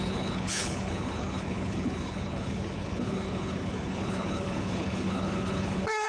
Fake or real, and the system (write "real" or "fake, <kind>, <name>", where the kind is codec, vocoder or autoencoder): fake, codec, HILCodec